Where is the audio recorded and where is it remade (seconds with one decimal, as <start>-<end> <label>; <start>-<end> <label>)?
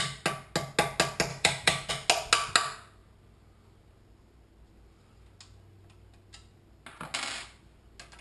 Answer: 0.0-1.3 recorded; 1.3-1.9 remade; 1.9-8.2 recorded